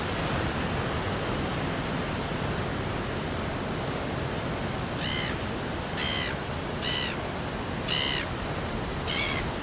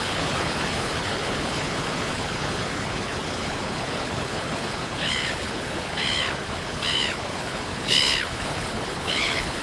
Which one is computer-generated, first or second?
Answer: second